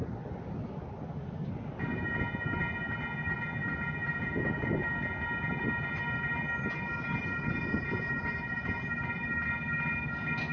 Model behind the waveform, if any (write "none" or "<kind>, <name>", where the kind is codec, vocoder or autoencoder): none